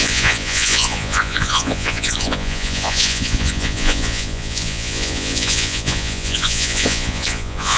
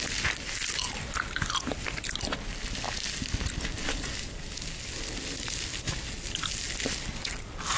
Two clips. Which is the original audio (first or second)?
second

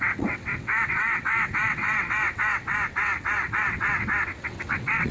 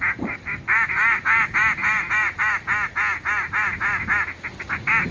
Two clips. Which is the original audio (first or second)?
second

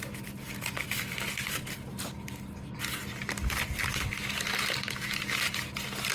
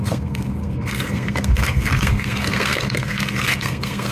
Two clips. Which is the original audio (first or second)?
first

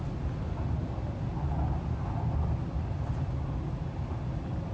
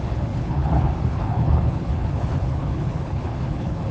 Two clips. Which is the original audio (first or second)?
first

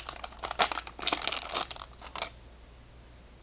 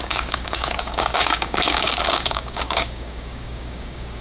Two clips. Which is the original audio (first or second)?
first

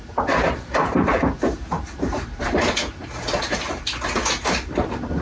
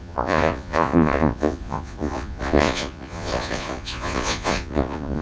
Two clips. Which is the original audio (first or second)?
first